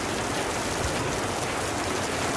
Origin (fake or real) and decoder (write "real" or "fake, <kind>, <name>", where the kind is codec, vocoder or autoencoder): real